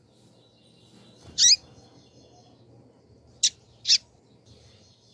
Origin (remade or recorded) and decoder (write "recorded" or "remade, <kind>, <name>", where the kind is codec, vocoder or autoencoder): recorded